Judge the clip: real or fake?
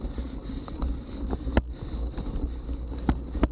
real